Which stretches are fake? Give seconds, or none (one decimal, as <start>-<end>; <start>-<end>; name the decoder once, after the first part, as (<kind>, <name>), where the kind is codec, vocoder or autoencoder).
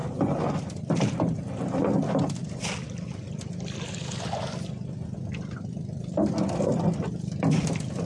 none